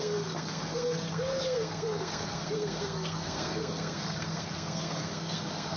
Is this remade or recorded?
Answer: remade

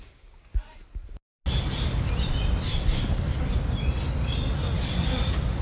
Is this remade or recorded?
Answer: recorded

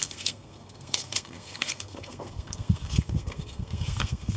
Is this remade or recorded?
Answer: remade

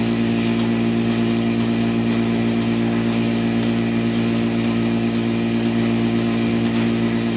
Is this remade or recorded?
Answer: recorded